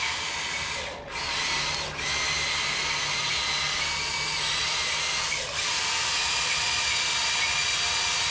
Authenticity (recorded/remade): recorded